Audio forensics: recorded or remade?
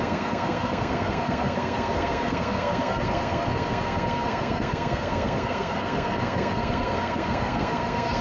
remade